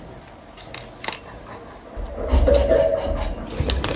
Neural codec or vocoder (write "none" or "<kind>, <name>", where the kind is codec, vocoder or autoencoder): none